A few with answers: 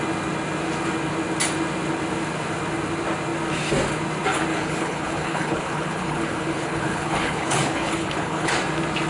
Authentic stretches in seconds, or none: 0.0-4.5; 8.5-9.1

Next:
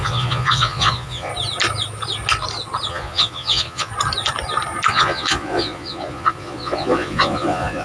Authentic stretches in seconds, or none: 1.3-2.9; 3.9-4.9

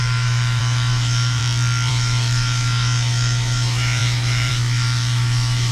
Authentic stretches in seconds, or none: 1.4-1.9